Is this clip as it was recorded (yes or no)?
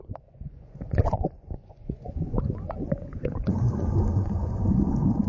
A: no